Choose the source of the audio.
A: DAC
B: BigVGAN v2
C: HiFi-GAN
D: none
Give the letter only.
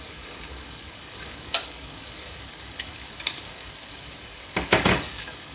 A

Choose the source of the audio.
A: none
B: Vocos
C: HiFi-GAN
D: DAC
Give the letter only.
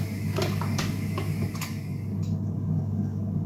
D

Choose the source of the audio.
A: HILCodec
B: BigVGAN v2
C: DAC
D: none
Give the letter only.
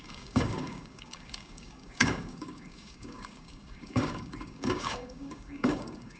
C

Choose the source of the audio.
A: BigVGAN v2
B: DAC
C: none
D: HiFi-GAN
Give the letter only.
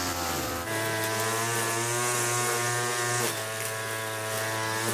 C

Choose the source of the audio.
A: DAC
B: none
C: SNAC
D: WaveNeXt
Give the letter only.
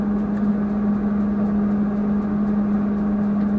B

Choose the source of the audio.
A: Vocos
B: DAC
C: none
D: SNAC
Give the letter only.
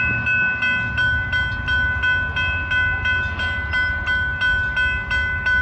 C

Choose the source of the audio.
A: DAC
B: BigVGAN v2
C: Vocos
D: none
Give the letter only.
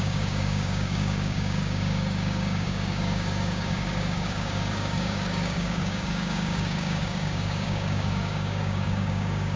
A